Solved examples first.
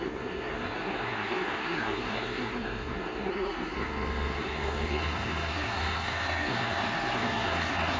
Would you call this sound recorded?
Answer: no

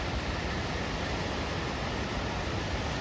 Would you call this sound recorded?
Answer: yes